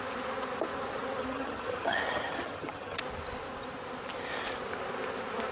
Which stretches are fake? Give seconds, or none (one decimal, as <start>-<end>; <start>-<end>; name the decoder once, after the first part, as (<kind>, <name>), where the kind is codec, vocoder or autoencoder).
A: 1.2-3.0 (vocoder, HiFi-GAN)